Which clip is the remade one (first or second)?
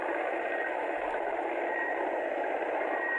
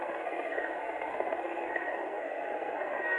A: second